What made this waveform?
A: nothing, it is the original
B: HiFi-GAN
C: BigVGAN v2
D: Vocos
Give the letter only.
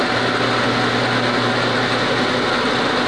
A